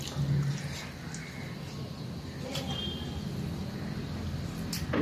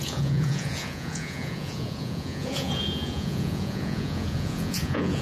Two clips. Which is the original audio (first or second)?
first